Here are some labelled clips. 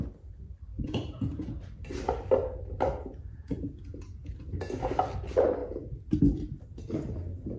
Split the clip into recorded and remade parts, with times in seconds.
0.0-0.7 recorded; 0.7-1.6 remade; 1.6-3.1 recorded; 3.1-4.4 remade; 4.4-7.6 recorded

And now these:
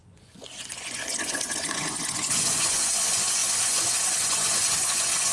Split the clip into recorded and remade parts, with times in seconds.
0.0-5.3 remade

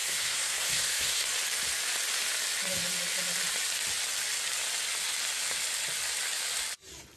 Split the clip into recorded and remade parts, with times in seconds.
0.0-1.3 remade; 1.3-7.2 recorded

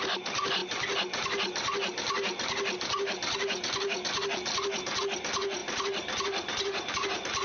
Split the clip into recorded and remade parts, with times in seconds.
0.0-7.4 recorded

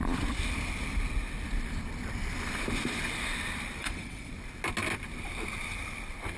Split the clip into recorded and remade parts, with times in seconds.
0.0-3.8 recorded; 3.8-4.3 remade; 4.3-6.4 recorded

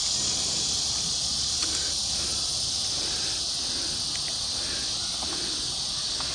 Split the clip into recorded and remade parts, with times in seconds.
0.0-6.3 recorded